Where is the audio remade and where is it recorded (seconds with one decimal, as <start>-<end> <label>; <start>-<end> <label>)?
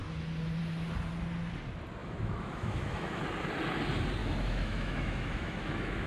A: 0.0-2.0 recorded; 2.0-3.2 remade; 3.2-4.2 recorded; 4.2-6.1 remade